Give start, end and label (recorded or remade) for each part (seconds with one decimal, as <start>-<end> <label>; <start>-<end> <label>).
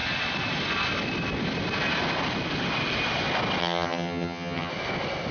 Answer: 0.0-3.6 recorded; 3.6-4.7 remade; 4.7-5.3 recorded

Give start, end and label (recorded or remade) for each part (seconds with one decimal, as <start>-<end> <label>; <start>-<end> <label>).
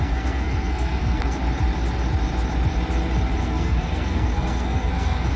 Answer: 0.0-1.4 remade; 1.4-3.4 recorded; 3.4-5.4 remade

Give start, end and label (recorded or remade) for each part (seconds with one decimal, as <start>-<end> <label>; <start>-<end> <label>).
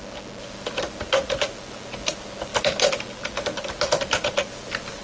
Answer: 0.0-5.0 recorded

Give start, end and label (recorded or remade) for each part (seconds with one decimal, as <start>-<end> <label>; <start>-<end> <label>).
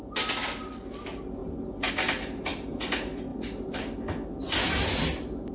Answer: 0.0-3.3 recorded; 3.3-3.8 remade; 3.8-5.5 recorded